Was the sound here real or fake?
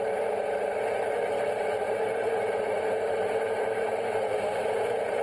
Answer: fake